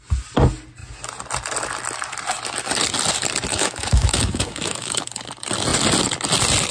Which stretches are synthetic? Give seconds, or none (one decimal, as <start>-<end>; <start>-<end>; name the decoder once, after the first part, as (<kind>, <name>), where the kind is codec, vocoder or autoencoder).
3.5-5.0 (autoencoder, DAC-VAE)